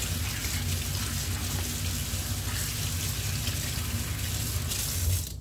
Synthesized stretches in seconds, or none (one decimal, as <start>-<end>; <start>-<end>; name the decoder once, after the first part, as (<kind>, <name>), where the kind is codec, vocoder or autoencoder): none

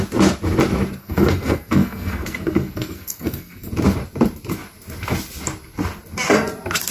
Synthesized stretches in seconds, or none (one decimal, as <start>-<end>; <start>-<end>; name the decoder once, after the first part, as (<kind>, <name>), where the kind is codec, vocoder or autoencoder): 1.0-3.7 (codec, SNAC)